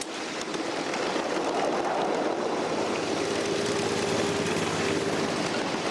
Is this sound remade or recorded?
recorded